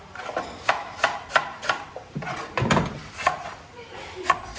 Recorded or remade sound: remade